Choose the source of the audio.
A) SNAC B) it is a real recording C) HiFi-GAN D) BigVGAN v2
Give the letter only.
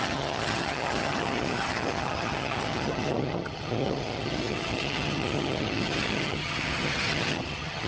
C